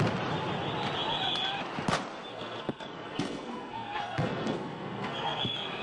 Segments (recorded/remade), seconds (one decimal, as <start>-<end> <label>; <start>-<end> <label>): 0.0-2.3 recorded; 2.3-5.8 remade